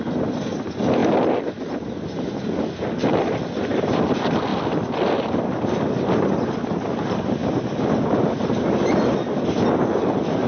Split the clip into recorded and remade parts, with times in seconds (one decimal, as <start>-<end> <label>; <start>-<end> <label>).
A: 0.0-1.0 remade; 1.0-2.6 recorded; 2.6-4.5 remade; 4.5-5.1 recorded; 5.1-7.4 remade; 7.4-9.6 recorded; 9.6-10.5 remade